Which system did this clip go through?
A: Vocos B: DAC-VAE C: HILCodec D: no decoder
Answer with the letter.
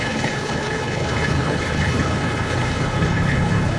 C